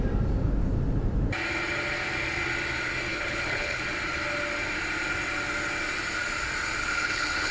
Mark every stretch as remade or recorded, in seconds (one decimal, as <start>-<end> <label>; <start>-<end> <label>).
0.0-3.1 recorded; 3.1-3.8 remade; 3.8-6.8 recorded; 6.8-7.5 remade